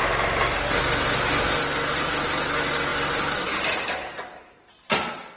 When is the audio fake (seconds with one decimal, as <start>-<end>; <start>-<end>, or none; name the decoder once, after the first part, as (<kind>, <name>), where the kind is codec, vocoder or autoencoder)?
none